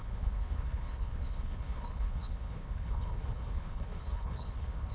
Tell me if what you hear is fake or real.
fake